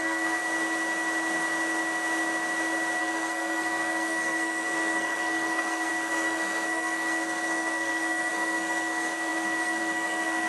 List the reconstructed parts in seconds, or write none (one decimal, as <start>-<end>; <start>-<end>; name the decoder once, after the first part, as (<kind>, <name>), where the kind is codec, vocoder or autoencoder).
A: 0.0-0.4 (codec, SNAC); 3.0-10.5